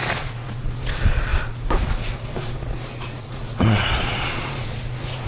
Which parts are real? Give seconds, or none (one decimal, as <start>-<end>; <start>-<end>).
none